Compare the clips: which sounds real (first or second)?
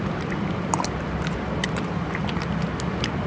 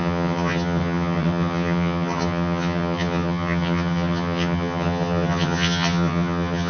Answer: first